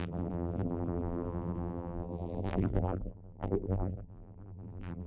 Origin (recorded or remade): remade